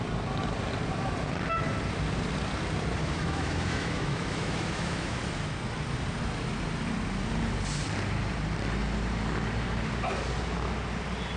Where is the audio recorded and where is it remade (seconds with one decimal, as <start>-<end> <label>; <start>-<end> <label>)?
0.0-3.0 recorded; 3.0-5.2 remade; 5.2-11.4 recorded